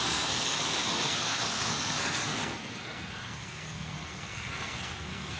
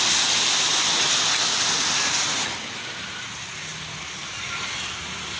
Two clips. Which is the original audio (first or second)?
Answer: second